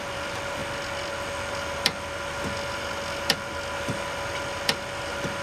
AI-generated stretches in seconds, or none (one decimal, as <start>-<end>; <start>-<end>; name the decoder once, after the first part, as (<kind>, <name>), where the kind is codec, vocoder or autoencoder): 0.0-0.6 (vocoder, BigVGAN v2); 1.5-5.4